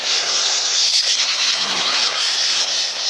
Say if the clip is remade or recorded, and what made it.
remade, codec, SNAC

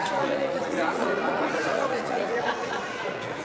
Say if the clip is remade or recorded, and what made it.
remade, vocoder, Vocos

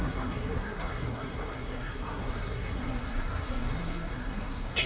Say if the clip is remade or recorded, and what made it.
remade, codec, SNAC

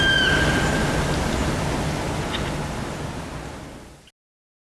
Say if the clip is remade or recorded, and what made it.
recorded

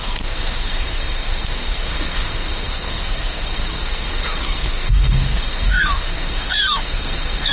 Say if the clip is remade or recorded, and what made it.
remade, codec, SNAC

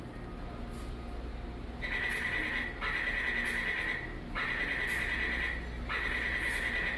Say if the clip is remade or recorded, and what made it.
recorded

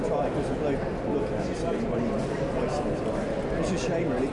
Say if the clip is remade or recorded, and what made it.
recorded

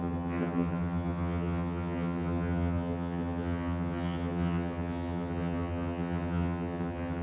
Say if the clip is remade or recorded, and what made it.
remade, vocoder, HiFi-GAN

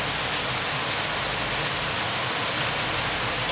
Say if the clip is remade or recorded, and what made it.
recorded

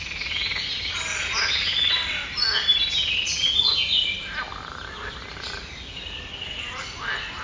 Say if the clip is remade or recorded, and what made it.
recorded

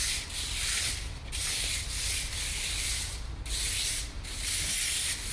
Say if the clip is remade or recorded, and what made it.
remade, vocoder, BigVGAN v2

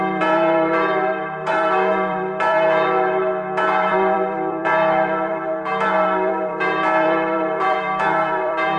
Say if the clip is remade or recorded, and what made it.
remade, vocoder, BigVGAN v2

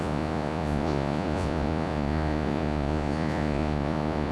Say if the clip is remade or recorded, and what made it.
remade, vocoder, Vocos